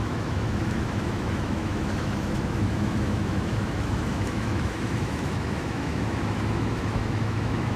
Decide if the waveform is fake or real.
fake